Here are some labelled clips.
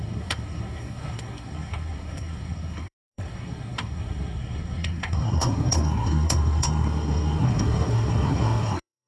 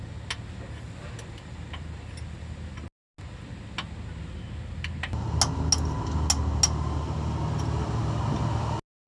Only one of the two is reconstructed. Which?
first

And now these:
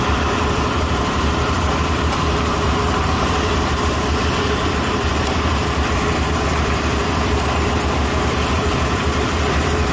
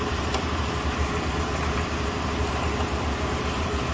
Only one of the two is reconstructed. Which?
first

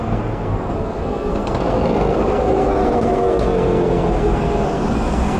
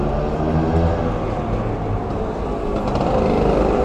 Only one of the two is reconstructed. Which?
first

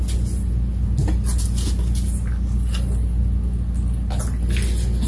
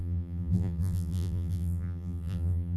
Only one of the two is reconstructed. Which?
second